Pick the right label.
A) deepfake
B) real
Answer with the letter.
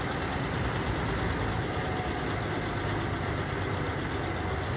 B